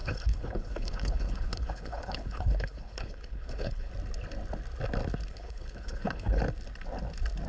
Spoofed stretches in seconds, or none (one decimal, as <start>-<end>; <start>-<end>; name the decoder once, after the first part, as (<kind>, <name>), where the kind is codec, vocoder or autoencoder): 0.0-3.9 (codec, HILCodec); 5.3-6.4